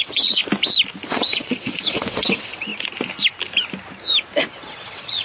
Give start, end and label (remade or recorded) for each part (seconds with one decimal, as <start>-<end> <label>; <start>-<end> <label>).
0.0-0.4 remade; 0.4-1.1 recorded; 1.1-2.7 remade; 2.7-4.5 recorded; 4.5-5.2 remade